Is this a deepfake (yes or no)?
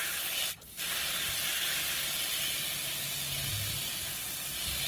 no